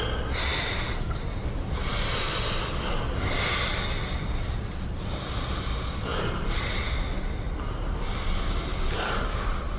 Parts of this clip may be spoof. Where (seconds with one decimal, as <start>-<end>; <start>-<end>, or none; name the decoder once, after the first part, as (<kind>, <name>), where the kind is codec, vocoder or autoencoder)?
none